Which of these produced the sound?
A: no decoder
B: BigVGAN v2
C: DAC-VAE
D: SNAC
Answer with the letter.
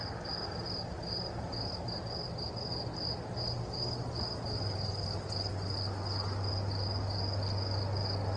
A